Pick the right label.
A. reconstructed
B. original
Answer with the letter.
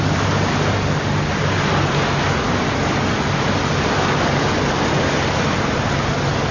B